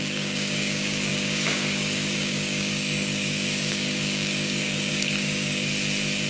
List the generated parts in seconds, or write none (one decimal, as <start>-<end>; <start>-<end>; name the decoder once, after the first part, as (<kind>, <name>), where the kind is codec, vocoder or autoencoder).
0.0-5.7 (codec, DAC)